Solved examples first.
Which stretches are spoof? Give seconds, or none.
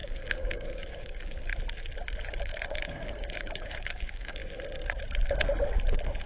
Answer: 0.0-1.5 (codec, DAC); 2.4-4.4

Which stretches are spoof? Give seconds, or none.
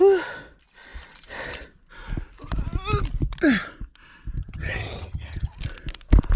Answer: 4.4-5.5 (vocoder, HiFi-GAN)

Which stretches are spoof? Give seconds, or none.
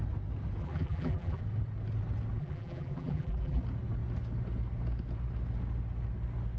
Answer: 0.6-1.4 (vocoder, BigVGAN v2); 2.4-3.6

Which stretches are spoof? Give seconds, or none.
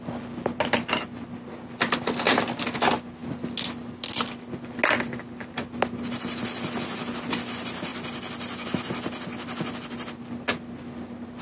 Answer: none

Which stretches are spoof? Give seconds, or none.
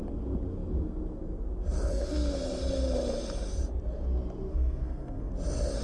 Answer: 4.5-5.3 (codec, SNAC)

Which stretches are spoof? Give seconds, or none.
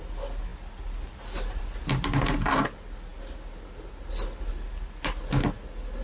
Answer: none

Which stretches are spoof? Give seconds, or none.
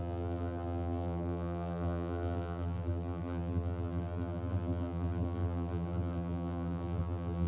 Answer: 0.0-7.5 (vocoder, BigVGAN v2)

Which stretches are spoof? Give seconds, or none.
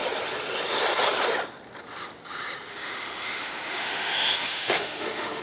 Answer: 2.7-5.4 (autoencoder, DAC-VAE)